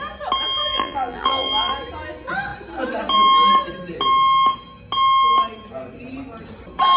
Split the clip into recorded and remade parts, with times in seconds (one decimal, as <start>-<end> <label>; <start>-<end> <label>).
0.0-0.7 recorded; 0.7-1.7 remade; 1.7-7.0 recorded